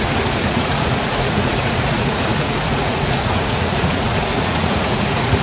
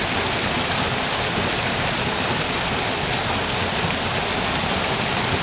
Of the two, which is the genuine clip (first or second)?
second